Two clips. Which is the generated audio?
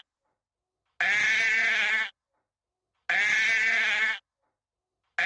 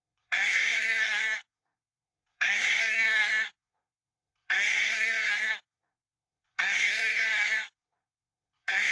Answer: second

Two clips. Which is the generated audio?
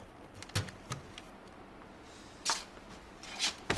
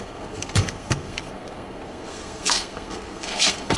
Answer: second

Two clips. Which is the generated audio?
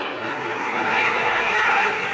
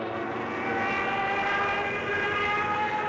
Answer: first